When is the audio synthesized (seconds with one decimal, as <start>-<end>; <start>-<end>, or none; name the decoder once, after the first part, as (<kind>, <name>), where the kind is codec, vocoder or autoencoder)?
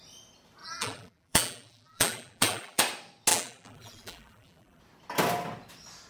0.6-2.8 (vocoder, BigVGAN v2); 3.3-4.8